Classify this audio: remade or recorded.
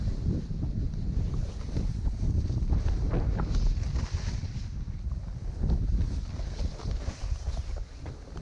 recorded